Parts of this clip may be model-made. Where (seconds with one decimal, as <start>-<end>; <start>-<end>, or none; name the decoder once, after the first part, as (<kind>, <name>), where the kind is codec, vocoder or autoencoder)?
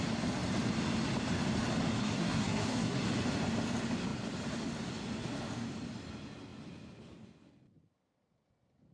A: 2.0-3.0 (codec, SNAC)